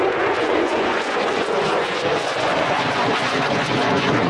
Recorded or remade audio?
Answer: remade